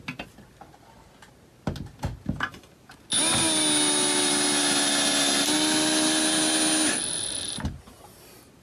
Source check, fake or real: real